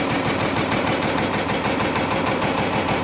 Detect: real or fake fake